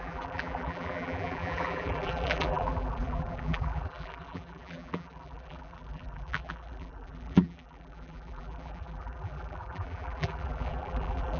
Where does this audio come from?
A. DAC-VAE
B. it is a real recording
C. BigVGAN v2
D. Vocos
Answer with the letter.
C